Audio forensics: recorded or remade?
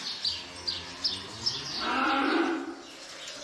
recorded